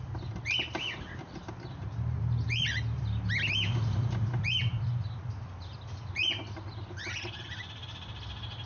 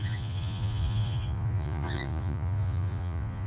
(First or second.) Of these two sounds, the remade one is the second